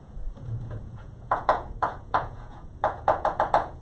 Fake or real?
fake